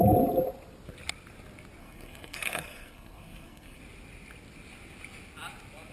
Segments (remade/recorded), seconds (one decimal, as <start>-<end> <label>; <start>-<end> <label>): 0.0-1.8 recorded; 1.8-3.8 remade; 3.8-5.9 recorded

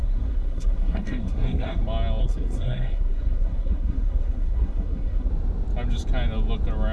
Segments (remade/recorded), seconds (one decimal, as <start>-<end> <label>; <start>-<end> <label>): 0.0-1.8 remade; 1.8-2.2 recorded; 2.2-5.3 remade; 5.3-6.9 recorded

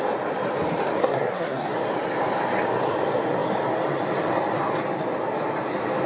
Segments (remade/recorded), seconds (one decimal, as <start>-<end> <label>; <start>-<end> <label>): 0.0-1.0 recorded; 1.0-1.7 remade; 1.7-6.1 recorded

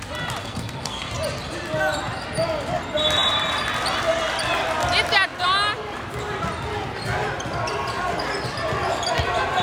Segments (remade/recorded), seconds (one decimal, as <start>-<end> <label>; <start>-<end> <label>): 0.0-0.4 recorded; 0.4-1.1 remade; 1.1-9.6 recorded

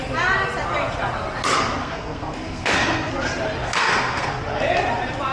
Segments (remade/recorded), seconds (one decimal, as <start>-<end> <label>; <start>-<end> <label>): 0.0-1.8 recorded; 1.8-3.1 remade; 3.1-3.6 recorded; 3.6-4.3 remade; 4.3-5.3 recorded